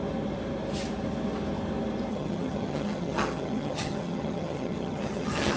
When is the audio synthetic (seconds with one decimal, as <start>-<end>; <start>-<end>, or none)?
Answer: 2.1-5.6